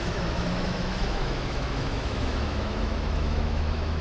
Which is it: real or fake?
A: fake